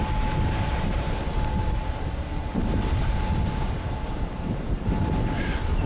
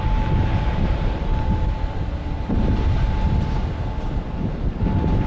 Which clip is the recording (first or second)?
second